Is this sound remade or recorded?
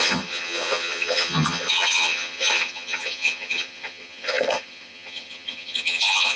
remade